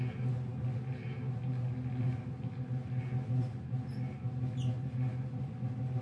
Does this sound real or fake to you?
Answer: real